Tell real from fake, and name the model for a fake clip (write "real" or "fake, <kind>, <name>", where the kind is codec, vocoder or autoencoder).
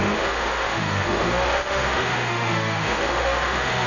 fake, autoencoder, DAC-VAE